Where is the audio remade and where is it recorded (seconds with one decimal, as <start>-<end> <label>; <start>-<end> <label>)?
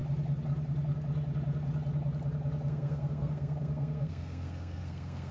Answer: 0.0-2.7 recorded; 2.7-5.3 remade